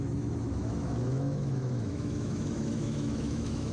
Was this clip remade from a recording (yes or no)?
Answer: yes